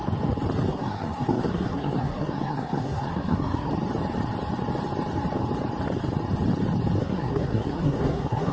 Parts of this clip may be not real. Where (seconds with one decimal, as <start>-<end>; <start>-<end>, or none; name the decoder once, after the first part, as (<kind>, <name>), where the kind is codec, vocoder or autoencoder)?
0.7-3.7 (codec, SNAC); 7.0-8.5